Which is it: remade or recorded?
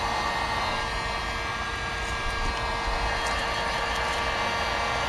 recorded